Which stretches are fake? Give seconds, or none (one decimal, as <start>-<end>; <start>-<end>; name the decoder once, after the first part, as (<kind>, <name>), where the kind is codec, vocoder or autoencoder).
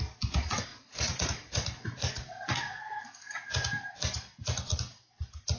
0.7-4.0 (vocoder, Vocos)